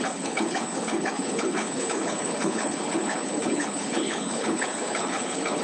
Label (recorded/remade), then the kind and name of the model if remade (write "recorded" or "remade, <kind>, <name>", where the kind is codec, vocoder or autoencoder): remade, codec, HILCodec